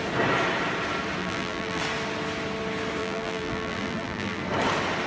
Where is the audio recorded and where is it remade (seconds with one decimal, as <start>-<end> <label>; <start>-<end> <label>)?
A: 0.0-1.2 recorded; 1.2-1.8 remade; 1.8-3.0 recorded; 3.0-4.4 remade; 4.4-5.1 recorded